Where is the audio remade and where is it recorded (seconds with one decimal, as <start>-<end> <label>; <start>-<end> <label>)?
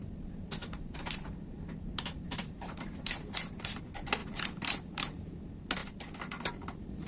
0.0-0.6 recorded; 0.6-3.8 remade; 3.8-4.2 recorded; 4.2-5.3 remade; 5.3-7.1 recorded